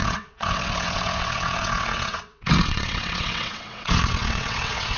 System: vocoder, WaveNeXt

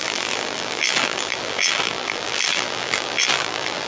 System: vocoder, BigVGAN v2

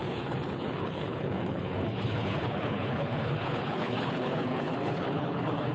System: codec, HILCodec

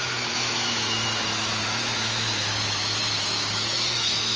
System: autoencoder, DAC-VAE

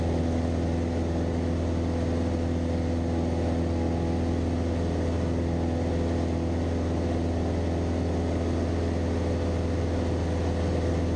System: none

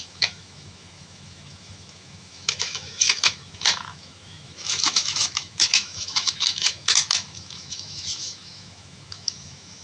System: autoencoder, DAC-VAE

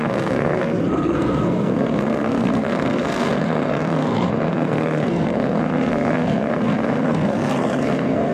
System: codec, SNAC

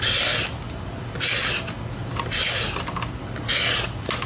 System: none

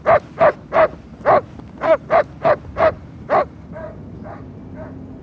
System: none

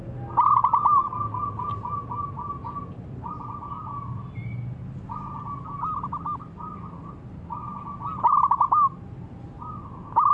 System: none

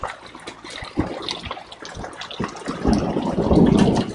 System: none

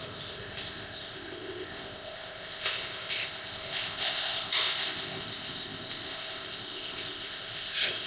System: codec, ZipCodec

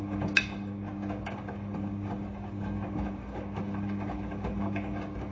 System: codec, DAC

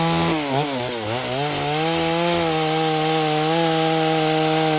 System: none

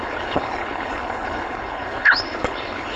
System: codec, HILCodec